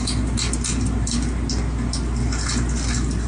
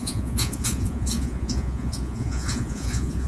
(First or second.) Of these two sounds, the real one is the first